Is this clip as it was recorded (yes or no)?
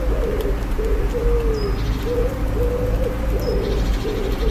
yes